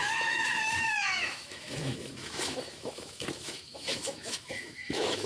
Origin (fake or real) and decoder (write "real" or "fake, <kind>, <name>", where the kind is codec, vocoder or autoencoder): fake, autoencoder, DAC-VAE